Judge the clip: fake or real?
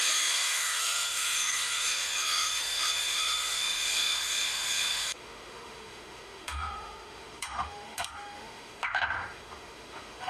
fake